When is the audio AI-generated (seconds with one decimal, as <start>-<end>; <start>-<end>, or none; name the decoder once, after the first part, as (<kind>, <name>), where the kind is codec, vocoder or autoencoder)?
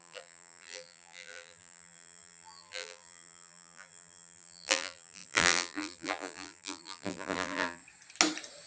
0.0-7.8 (vocoder, BigVGAN v2)